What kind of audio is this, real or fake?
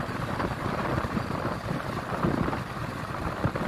real